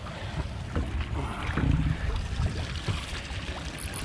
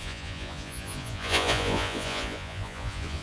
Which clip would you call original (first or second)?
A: first